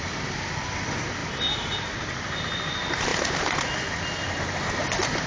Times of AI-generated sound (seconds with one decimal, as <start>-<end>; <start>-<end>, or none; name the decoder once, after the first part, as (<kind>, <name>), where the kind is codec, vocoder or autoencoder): 1.2-2.4 (vocoder, BigVGAN v2)